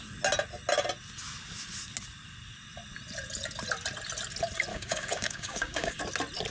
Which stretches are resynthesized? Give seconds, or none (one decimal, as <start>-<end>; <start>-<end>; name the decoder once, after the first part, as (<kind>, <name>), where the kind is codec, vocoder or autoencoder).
4.7-6.0 (codec, DAC)